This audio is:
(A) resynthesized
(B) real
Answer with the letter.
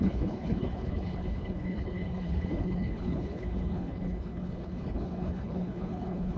A